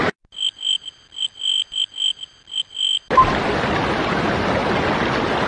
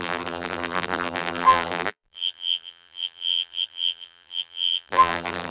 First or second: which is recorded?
first